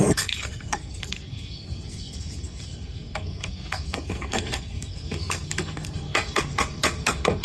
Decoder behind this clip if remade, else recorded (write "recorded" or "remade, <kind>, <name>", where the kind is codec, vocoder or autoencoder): remade, codec, SNAC